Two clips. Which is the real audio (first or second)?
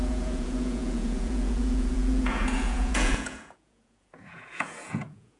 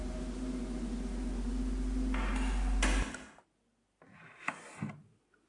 second